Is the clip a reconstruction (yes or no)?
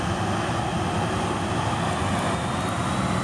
no